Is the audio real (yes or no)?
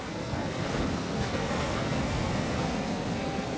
no